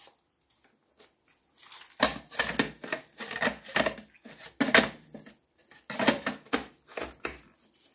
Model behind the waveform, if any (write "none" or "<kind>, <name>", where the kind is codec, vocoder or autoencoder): none